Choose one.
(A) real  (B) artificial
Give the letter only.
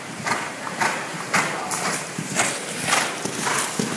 B